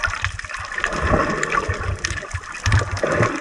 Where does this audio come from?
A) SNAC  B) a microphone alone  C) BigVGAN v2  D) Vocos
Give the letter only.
B